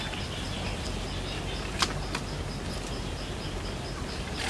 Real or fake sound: real